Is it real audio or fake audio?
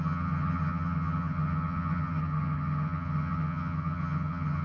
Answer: fake